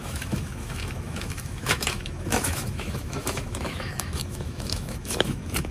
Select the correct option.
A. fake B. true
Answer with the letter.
A